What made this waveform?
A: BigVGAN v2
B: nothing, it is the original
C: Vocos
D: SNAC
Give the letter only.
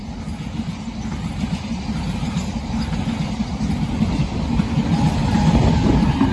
B